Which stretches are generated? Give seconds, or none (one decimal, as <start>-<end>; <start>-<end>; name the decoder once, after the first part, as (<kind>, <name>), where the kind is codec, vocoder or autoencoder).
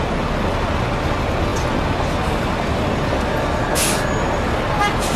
none